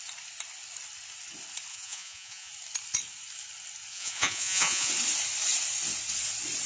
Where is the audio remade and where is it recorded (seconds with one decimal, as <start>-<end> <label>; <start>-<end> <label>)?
0.0-1.7 recorded; 1.7-2.5 remade; 2.5-3.9 recorded; 3.9-4.9 remade; 4.9-6.7 recorded